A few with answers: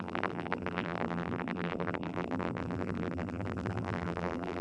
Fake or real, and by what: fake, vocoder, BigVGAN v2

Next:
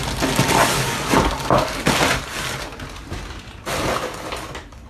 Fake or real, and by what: real